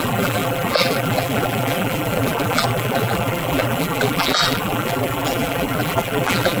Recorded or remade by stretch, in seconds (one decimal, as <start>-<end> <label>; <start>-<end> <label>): 0.0-6.6 remade